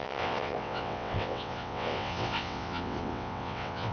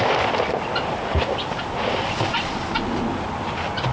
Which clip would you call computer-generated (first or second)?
first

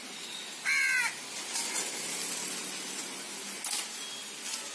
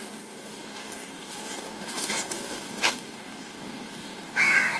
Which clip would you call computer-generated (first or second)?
second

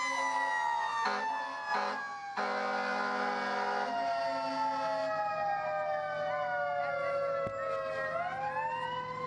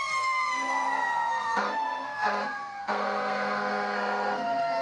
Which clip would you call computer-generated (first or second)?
second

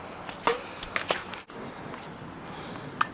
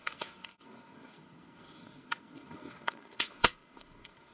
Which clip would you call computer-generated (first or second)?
second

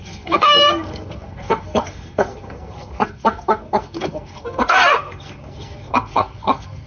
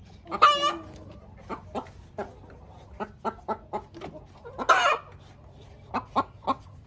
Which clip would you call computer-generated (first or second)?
first